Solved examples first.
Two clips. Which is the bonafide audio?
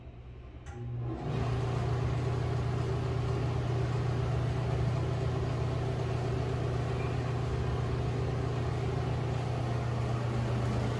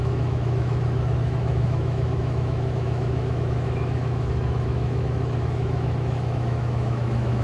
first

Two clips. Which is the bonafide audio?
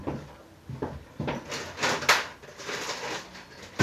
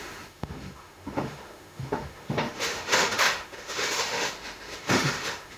first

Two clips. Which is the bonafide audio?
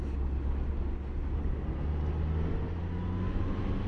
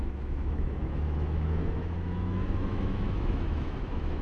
first